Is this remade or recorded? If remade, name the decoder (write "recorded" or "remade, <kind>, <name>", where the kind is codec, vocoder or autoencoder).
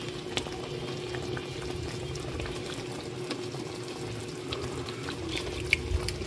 recorded